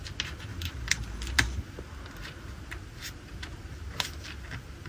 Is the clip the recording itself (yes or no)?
yes